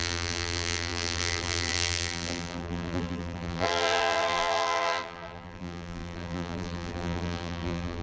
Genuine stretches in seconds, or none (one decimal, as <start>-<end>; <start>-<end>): none